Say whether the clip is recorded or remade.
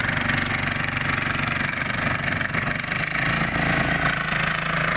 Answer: recorded